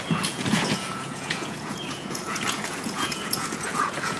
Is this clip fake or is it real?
fake